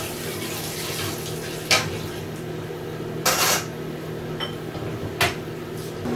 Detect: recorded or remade recorded